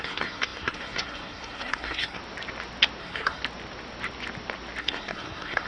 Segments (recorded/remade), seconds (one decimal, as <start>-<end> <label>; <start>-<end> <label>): 0.0-2.2 remade; 2.2-3.0 recorded; 3.0-3.4 remade; 3.4-4.8 recorded; 4.8-5.7 remade